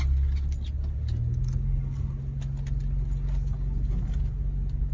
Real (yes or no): yes